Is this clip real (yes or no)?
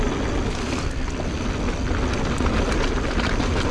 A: yes